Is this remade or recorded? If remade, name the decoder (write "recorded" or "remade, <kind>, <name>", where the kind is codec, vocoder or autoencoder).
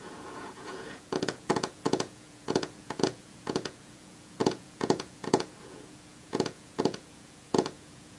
remade, vocoder, Vocos